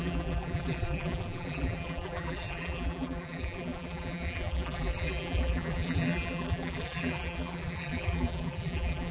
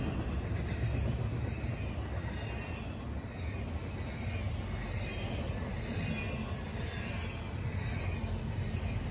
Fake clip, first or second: first